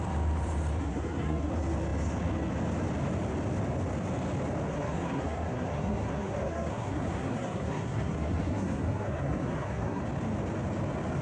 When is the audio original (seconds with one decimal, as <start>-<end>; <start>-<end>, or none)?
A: 0.0-0.8; 1.5-4.7; 10.0-11.2